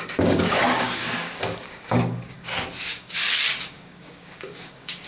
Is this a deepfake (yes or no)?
yes